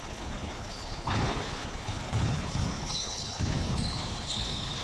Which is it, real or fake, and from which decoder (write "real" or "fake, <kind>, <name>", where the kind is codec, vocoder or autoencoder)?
fake, codec, HILCodec